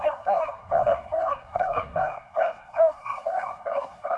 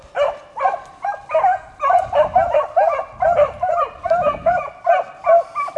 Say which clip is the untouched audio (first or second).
second